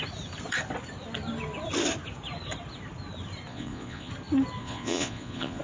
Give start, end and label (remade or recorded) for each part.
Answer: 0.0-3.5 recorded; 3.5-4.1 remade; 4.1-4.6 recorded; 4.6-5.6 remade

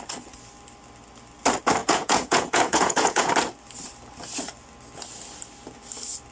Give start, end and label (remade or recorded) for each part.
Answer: 0.0-1.8 recorded; 1.8-3.3 remade; 3.3-6.3 recorded

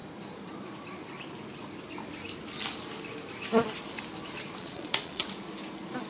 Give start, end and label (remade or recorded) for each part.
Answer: 0.0-4.6 recorded; 4.6-5.2 remade; 5.2-6.1 recorded

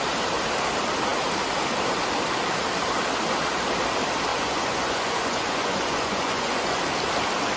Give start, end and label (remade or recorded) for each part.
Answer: 0.0-4.3 recorded; 4.3-6.8 remade; 6.8-7.6 recorded